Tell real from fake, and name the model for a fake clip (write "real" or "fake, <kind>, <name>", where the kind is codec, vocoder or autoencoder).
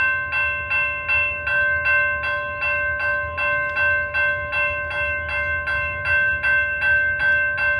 real